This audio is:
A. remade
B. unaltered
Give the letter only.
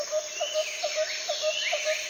B